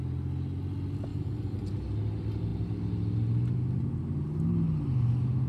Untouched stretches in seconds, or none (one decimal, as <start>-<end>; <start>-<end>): 0.0-1.1; 1.7-5.5